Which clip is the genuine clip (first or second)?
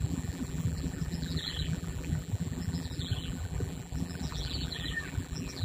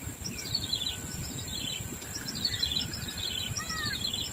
second